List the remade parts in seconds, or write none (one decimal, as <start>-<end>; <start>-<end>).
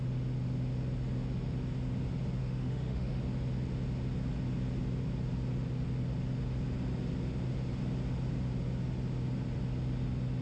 2.4-3.2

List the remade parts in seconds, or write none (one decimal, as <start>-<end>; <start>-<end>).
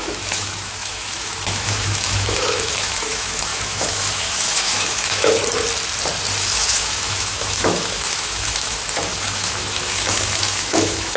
0.0-5.4; 6.4-11.2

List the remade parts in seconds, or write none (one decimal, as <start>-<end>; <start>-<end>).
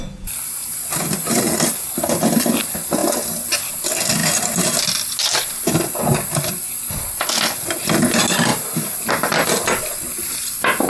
none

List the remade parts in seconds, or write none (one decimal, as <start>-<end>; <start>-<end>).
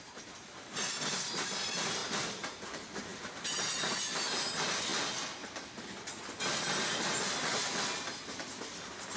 none